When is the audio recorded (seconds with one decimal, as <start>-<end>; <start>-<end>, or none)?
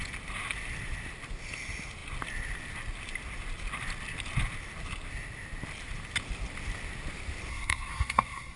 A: 0.0-7.5